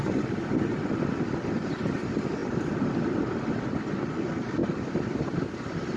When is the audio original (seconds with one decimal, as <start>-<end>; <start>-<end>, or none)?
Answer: 0.0-6.0